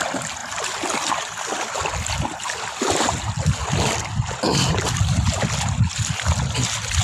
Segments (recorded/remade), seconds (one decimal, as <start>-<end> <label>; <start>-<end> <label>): 0.0-7.0 recorded